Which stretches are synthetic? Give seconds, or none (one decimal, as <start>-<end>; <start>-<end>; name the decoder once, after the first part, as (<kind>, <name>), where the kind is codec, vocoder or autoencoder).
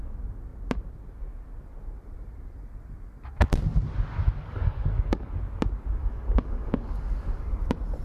4.4-5.4 (codec, DAC); 6.0-7.5